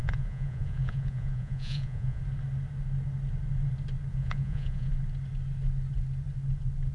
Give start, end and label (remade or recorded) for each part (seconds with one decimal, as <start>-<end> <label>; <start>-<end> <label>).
0.0-2.2 remade; 2.2-4.1 recorded; 4.1-4.9 remade; 4.9-6.9 recorded